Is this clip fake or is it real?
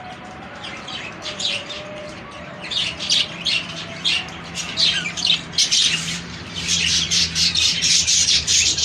fake